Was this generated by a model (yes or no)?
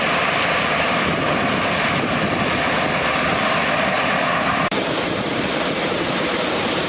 yes